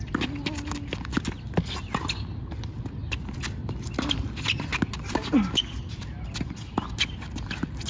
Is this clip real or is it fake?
real